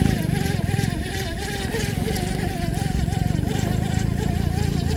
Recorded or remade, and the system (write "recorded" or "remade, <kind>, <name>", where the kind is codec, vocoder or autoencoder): recorded